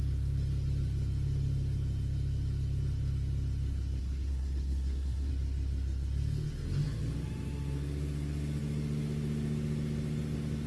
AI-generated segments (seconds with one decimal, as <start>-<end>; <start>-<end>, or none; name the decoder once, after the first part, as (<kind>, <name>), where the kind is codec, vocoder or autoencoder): 4.0-5.3 (codec, SNAC)